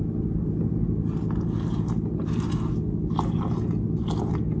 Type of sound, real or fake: real